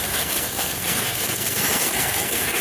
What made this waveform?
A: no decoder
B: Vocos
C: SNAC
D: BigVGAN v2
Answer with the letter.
C